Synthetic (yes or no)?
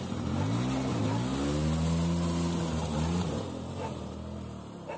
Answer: no